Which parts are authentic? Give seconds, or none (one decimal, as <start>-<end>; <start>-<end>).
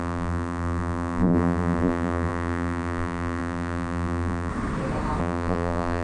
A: 4.5-5.2